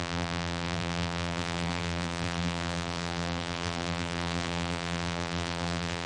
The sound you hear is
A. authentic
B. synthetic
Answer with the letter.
B